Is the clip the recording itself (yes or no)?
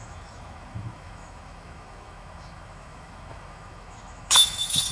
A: no